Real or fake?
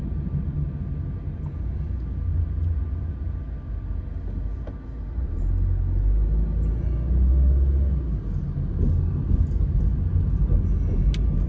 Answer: real